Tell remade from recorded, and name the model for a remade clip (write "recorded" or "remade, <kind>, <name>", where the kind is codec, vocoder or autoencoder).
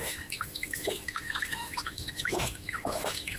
remade, autoencoder, DAC-VAE